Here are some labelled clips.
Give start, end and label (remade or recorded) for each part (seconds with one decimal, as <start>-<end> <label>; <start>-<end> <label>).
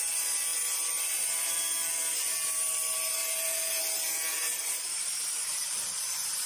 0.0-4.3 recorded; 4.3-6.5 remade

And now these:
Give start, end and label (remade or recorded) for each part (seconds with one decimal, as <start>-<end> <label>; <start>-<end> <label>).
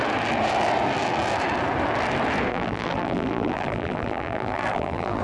0.0-2.5 recorded; 2.5-5.2 remade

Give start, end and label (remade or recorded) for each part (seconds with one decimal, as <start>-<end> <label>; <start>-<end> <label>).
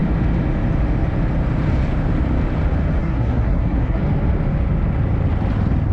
0.0-3.0 recorded; 3.0-4.0 remade; 4.0-5.9 recorded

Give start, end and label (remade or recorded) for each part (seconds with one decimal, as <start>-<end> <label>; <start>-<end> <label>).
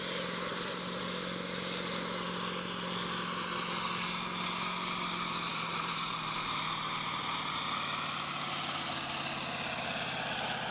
0.0-0.5 recorded; 0.5-1.0 remade; 1.0-5.5 recorded; 5.5-6.6 remade; 6.6-10.7 recorded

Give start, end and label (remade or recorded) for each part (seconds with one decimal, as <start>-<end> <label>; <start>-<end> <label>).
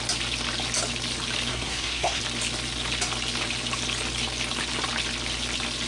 0.0-1.5 recorded; 1.5-2.2 remade; 2.2-5.9 recorded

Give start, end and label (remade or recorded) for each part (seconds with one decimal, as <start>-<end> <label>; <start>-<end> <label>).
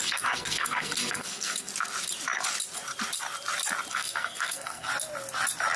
0.0-1.7 remade; 1.7-3.9 recorded; 3.9-4.9 remade; 4.9-5.8 recorded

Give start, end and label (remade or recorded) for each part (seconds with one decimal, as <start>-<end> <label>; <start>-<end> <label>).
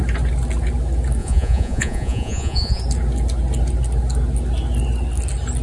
0.0-1.2 recorded; 1.2-2.8 remade; 2.8-5.6 recorded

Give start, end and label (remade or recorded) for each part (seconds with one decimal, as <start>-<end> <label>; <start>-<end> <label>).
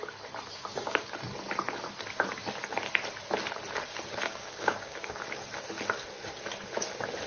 0.0-0.5 recorded; 0.5-1.1 remade; 1.1-4.3 recorded; 4.3-5.2 remade; 5.2-7.3 recorded